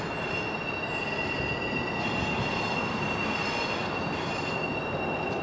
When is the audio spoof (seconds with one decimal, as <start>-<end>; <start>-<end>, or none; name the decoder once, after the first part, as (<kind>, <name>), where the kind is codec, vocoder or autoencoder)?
none